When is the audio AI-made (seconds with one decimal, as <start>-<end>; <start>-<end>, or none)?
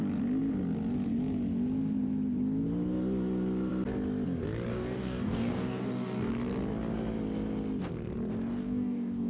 4.7-6.3; 8.6-9.3